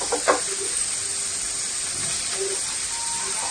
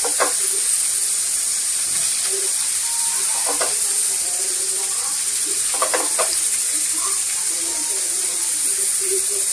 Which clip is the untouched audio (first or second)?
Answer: first